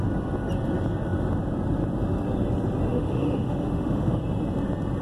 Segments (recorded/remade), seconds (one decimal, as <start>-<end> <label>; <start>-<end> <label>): 0.0-2.9 recorded; 2.9-4.2 remade; 4.2-5.0 recorded